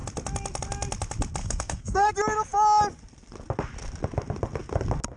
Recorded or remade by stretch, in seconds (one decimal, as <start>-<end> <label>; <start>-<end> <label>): 0.0-1.4 recorded; 1.4-2.1 remade; 2.1-5.2 recorded